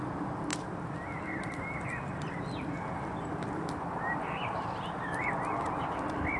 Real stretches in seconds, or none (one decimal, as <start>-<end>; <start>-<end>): 0.0-0.5; 4.3-6.4